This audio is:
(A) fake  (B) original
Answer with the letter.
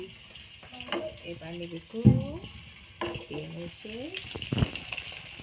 B